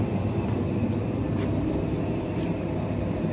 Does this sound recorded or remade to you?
recorded